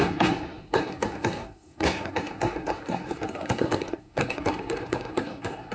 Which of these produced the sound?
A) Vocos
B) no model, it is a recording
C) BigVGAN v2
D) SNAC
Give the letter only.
D